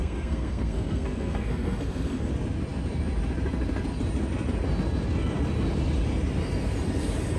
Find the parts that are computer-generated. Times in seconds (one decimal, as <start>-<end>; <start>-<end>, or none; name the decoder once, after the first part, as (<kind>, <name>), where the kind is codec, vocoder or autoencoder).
0.0-2.3 (codec, SNAC)